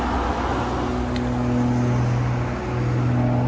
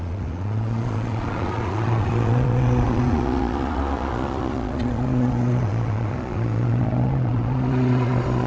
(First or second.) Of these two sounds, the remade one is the second